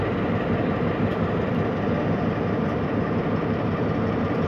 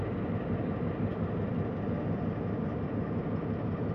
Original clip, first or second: second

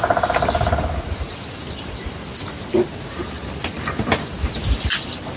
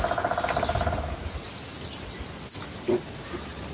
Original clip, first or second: second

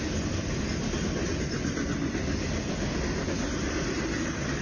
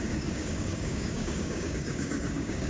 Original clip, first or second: first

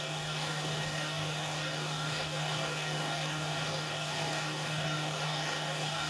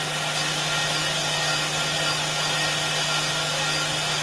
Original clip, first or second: second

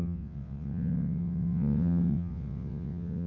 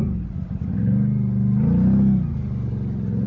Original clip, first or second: second